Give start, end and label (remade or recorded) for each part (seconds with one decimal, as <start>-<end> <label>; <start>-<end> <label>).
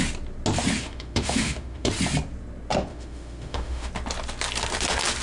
0.0-0.8 recorded; 0.8-1.9 remade; 1.9-2.9 recorded; 2.9-3.9 remade; 3.9-5.2 recorded